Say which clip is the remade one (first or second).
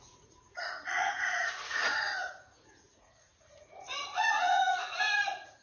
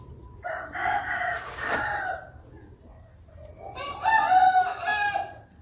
first